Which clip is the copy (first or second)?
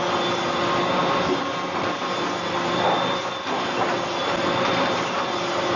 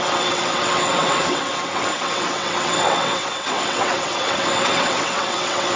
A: second